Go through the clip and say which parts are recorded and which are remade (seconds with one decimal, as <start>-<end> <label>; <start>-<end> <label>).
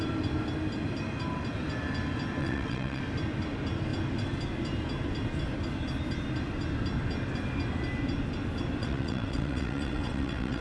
0.0-2.4 recorded; 2.4-3.0 remade; 3.0-8.8 recorded; 8.8-10.6 remade